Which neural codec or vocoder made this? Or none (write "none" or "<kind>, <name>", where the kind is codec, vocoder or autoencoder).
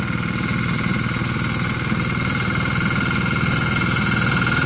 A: none